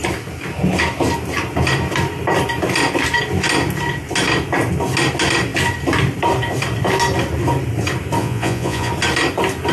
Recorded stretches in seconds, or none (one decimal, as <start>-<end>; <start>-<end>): 0.0-8.2; 8.9-9.7

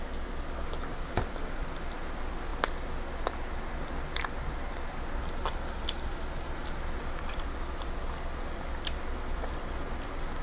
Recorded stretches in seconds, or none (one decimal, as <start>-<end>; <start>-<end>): 0.0-10.4